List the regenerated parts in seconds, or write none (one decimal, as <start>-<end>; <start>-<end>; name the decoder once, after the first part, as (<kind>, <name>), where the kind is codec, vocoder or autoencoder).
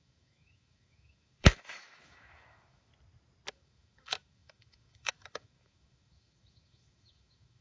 0.0-2.9 (autoencoder, DAC-VAE); 3.5-7.6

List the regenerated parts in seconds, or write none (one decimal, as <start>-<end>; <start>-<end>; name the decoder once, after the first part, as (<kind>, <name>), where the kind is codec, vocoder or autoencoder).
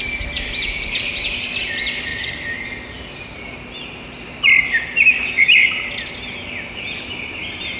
none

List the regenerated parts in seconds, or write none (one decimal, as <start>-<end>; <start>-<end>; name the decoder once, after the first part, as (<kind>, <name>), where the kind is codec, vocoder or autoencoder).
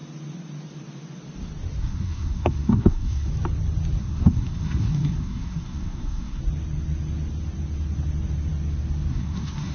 1.8-3.3 (codec, SNAC); 4.0-6.4; 9.1-9.7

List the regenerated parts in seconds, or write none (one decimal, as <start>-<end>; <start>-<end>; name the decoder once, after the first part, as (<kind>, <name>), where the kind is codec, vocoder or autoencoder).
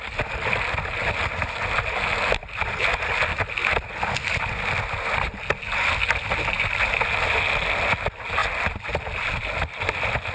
none